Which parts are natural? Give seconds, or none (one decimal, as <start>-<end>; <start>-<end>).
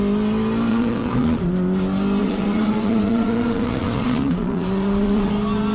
0.0-0.7; 1.4-2.2; 5.3-5.7